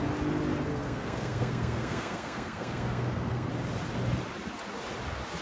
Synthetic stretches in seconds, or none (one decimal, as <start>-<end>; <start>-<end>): 0.7-3.5